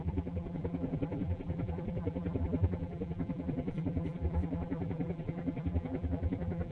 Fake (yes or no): yes